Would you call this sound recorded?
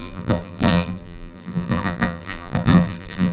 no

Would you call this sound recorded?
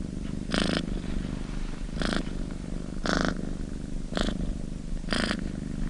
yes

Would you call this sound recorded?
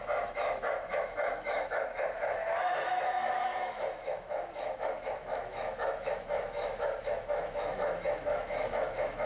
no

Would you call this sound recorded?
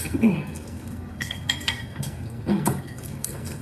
no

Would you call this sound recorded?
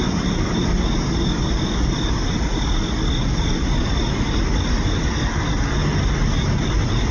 yes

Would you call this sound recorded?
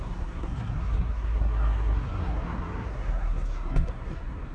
no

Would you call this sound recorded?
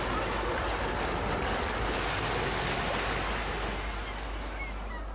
yes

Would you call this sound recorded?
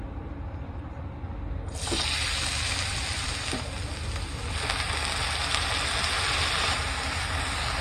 yes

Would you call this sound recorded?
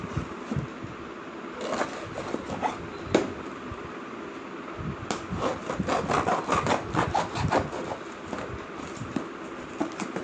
yes